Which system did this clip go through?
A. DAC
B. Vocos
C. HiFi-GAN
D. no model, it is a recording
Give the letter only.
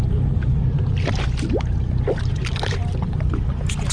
D